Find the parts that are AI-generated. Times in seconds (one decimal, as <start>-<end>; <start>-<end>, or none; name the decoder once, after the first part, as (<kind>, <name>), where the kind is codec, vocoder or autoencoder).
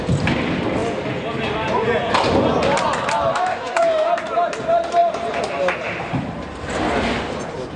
3.3-4.1 (codec, DAC)